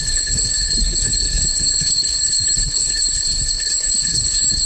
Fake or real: fake